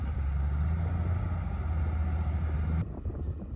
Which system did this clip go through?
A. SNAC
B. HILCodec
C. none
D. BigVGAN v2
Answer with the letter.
C